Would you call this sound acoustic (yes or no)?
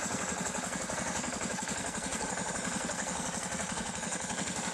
no